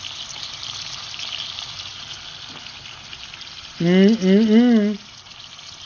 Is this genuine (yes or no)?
yes